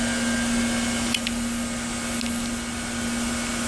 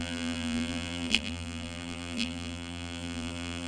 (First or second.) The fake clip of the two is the second